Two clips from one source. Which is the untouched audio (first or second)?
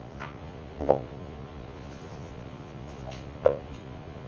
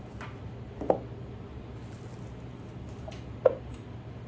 second